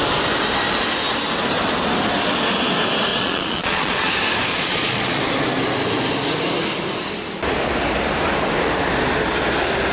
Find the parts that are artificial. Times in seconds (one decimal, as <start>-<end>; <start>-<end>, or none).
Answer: 3.1-4.1; 4.5-5.2